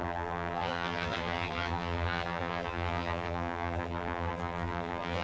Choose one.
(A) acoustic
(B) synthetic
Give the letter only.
B